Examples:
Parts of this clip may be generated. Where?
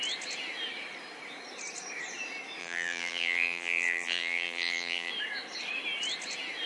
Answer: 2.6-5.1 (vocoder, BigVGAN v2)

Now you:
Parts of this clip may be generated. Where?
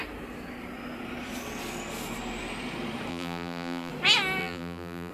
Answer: 3.1-3.9 (vocoder, BigVGAN v2); 4.4-5.1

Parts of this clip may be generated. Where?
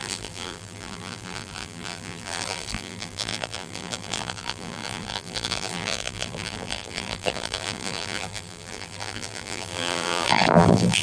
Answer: 0.0-11.0 (vocoder, BigVGAN v2)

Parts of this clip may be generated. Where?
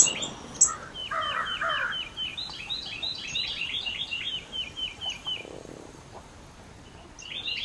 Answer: 1.0-1.7 (vocoder, BigVGAN v2); 2.3-6.0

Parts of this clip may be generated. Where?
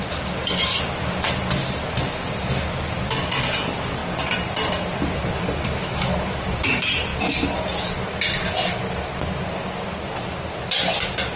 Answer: 0.0-4.0 (vocoder, BigVGAN v2); 4.7-7.1; 10.9-11.4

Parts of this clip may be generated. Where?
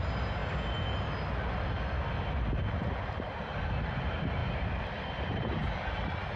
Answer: 0.0-0.4 (vocoder, BigVGAN v2); 3.1-5.6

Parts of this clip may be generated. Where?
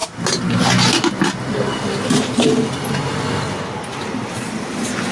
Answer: 3.9-4.5 (vocoder, BigVGAN v2)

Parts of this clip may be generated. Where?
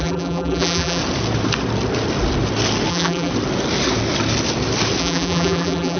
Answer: 0.0-1.0 (vocoder, BigVGAN v2); 2.9-3.3; 5.0-6.0